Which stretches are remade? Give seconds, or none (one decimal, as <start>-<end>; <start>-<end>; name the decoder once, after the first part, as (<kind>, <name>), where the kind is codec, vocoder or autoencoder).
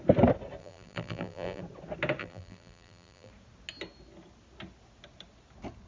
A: 0.6-1.6 (vocoder, BigVGAN v2); 2.2-3.3